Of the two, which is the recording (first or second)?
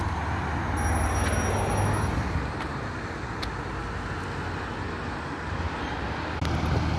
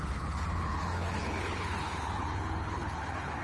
first